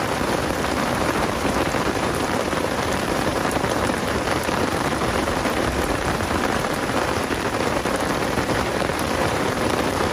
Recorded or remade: remade